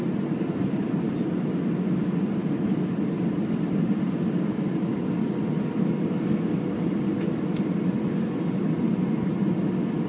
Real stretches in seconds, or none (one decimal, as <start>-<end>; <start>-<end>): 0.0-10.1